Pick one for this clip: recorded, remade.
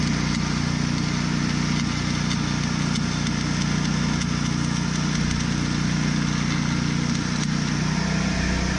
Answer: recorded